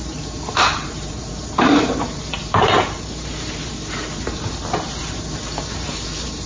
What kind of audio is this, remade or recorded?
remade